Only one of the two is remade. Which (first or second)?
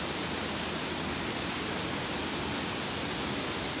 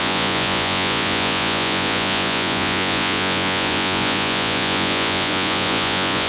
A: second